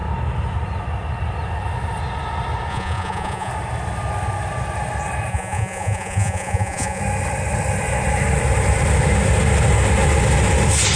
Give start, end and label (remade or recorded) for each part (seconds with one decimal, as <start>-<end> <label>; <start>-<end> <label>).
0.0-2.7 recorded; 2.7-3.5 remade; 3.5-5.3 recorded; 5.3-7.0 remade; 7.0-11.0 recorded